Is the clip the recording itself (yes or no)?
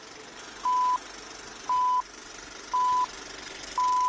yes